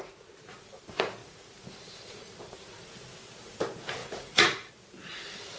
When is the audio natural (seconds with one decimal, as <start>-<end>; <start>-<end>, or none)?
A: 0.0-1.2; 2.4-4.0; 4.7-5.6